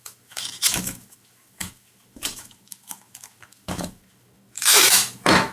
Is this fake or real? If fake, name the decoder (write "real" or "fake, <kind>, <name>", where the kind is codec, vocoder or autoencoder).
fake, autoencoder, DAC-VAE